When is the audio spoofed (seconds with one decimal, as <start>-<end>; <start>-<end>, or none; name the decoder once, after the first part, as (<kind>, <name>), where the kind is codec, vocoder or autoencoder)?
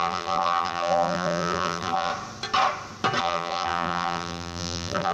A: 0.0-2.1 (vocoder, BigVGAN v2); 3.2-5.1